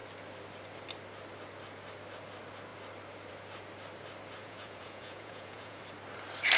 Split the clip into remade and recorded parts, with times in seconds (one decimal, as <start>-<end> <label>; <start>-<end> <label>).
0.0-4.4 recorded; 4.4-5.8 remade; 5.8-6.6 recorded